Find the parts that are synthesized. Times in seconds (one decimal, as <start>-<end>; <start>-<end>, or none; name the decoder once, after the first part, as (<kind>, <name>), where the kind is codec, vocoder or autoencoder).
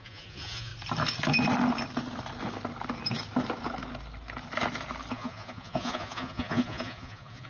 0.0-0.7 (vocoder, Vocos); 5.1-7.5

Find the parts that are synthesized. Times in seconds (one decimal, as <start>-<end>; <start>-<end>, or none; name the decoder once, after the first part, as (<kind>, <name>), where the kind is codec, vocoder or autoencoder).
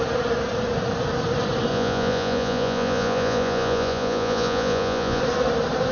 1.7-5.2 (vocoder, Vocos)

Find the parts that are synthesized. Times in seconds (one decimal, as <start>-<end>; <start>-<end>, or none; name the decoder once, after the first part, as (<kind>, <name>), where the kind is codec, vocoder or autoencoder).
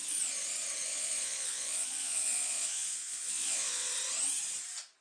0.9-3.9 (vocoder, Vocos)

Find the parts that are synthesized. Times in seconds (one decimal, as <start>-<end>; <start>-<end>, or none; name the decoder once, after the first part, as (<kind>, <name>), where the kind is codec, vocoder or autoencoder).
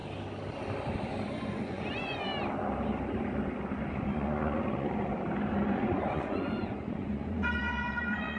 1.3-2.3 (vocoder, Vocos); 3.9-5.1; 5.7-8.4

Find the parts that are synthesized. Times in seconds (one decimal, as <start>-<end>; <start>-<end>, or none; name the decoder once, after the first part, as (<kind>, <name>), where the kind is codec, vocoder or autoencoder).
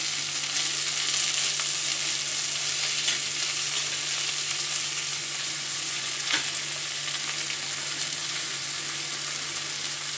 5.1-6.4 (vocoder, Vocos); 8.2-8.8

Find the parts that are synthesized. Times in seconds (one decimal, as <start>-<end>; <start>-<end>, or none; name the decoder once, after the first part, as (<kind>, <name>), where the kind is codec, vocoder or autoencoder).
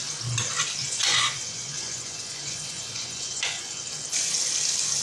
0.8-3.8 (vocoder, Vocos)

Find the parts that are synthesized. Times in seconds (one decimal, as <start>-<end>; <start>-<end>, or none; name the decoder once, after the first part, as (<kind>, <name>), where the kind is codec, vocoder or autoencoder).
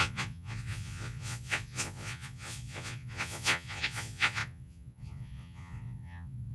0.0-6.5 (vocoder, Vocos)